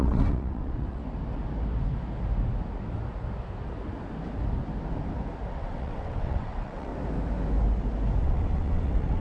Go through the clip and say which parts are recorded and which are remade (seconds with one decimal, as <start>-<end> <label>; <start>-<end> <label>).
0.0-1.0 remade; 1.0-5.5 recorded; 5.5-6.9 remade; 6.9-8.2 recorded; 8.2-9.2 remade